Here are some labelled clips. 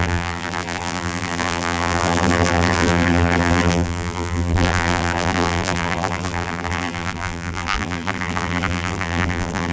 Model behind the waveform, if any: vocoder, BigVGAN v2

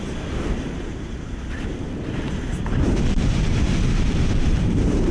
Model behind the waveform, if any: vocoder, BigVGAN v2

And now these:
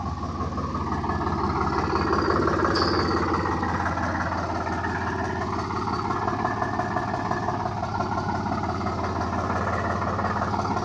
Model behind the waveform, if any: none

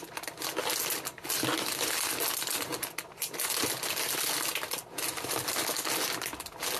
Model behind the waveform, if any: none